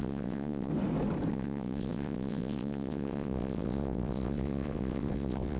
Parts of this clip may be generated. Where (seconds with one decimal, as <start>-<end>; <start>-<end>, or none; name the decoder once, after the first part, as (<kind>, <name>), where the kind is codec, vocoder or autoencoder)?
0.0-0.7 (vocoder, WaveNeXt); 1.3-5.6